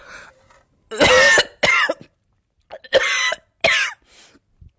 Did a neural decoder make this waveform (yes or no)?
no